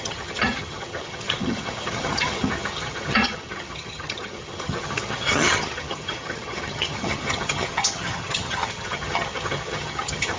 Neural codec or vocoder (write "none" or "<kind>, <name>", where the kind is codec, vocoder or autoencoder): vocoder, HiFi-GAN